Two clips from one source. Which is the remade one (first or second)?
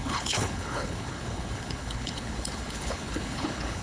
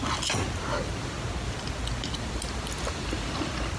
first